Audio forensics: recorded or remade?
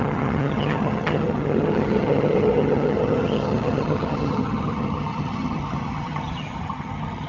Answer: remade